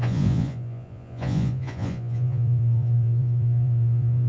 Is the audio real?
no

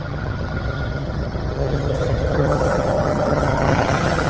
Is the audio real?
no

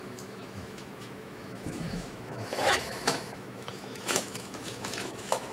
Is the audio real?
no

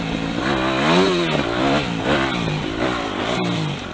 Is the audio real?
yes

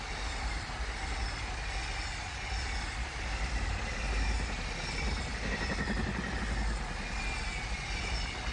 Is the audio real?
yes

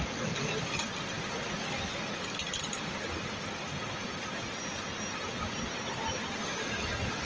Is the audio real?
yes